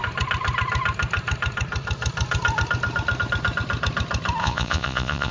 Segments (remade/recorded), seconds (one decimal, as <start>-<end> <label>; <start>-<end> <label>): 0.0-4.4 recorded; 4.4-5.3 remade